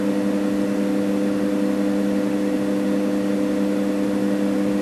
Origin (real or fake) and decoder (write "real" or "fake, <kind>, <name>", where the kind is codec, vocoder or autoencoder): real